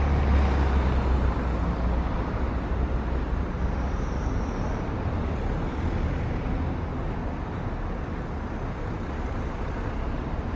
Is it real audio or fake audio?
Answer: real